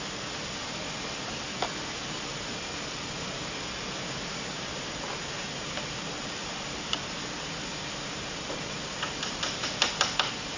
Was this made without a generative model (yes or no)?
yes